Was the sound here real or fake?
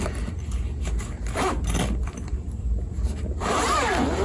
fake